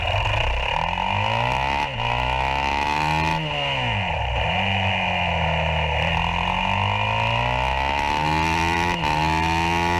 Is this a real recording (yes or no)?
yes